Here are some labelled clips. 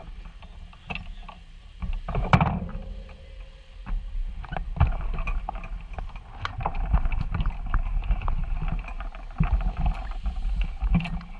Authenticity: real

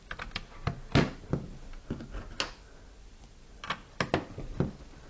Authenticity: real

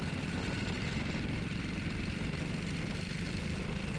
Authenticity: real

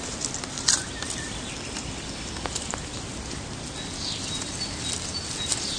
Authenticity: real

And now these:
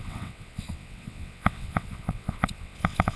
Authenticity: fake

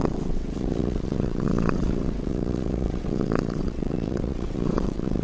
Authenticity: fake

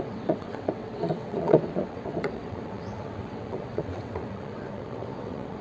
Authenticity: fake